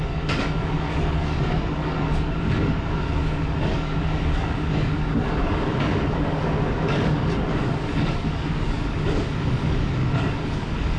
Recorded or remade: remade